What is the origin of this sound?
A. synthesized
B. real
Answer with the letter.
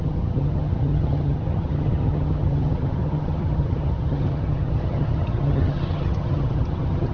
A